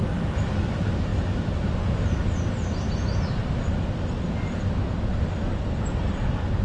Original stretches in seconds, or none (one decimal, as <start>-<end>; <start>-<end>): 0.0-6.6